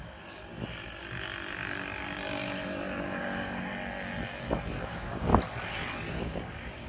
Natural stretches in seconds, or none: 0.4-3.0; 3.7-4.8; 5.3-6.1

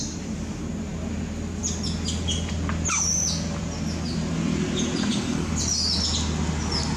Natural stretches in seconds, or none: 0.0-5.1; 5.6-7.0

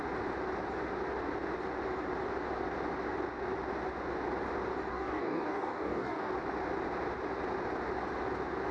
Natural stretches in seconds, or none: 0.0-4.9; 6.3-8.7

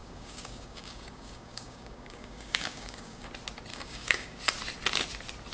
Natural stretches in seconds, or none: 3.3-3.7; 4.4-5.5

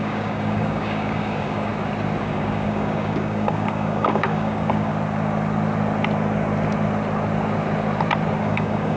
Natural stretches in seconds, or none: 1.7-2.2; 4.9-8.4